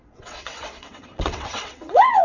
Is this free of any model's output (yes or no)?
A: no